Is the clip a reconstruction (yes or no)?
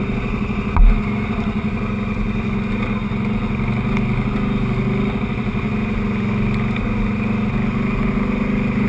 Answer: no